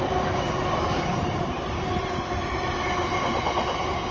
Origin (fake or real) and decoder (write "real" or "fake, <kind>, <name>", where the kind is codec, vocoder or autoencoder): real